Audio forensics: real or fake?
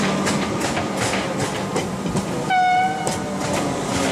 real